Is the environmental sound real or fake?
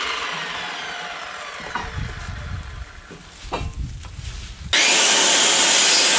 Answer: real